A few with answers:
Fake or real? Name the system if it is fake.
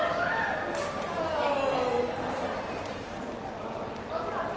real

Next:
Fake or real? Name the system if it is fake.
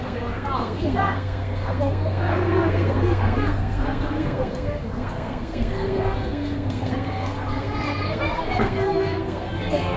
fake, codec, SNAC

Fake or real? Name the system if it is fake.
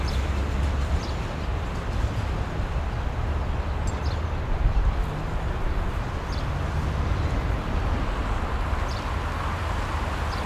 real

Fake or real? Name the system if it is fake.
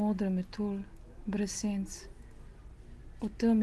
real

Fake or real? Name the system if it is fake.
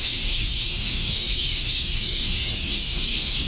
fake, codec, DAC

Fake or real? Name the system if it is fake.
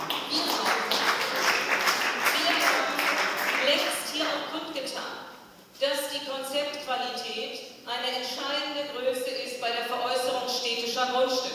real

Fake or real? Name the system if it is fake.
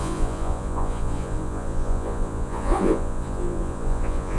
fake, vocoder, Vocos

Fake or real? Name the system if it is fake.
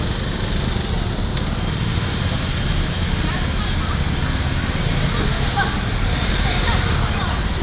real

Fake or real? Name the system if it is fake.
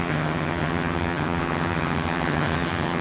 fake, vocoder, HiFi-GAN